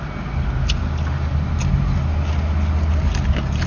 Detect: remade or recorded recorded